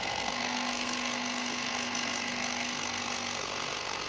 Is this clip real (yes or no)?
no